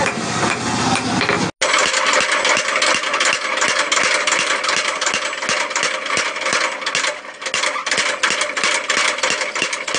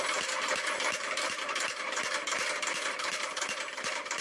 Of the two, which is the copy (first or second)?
second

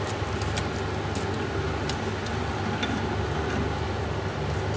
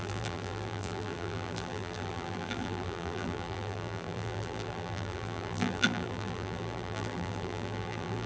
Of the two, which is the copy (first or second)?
second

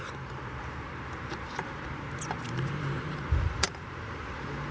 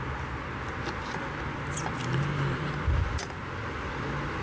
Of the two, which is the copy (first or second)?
first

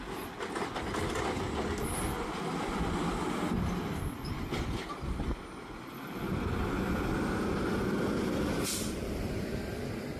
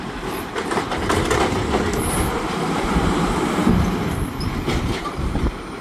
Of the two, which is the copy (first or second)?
second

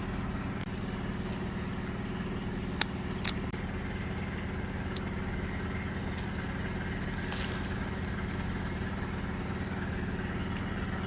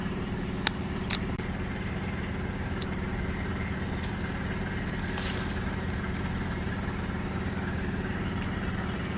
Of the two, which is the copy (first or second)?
second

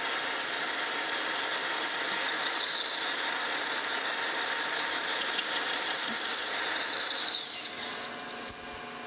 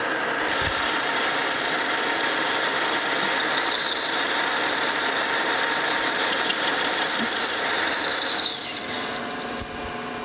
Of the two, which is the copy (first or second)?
second